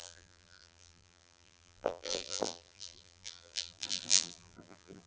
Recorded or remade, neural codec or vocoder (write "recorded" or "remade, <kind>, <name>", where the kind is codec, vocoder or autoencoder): remade, vocoder, BigVGAN v2